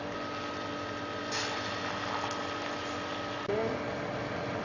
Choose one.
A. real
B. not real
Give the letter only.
A